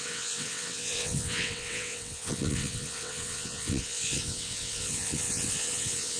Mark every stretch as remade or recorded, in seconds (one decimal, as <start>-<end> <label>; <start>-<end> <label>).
0.0-6.2 remade